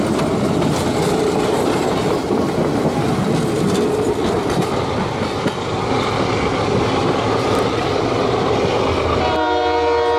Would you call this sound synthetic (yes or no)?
no